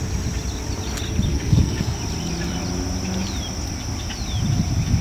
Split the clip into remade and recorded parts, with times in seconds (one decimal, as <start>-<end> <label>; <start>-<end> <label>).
0.0-1.3 recorded; 1.3-2.0 remade; 2.0-5.0 recorded